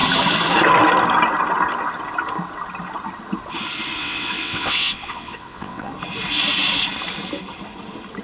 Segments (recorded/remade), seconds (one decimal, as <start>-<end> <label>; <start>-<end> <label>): 0.0-4.0 recorded; 4.0-5.9 remade; 5.9-8.2 recorded